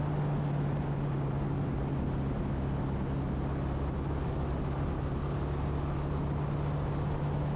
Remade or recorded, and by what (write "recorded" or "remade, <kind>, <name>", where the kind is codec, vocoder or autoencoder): recorded